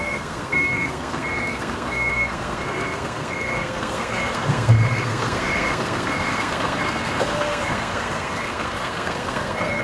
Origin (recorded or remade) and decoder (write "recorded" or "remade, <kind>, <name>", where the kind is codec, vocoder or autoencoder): remade, codec, SNAC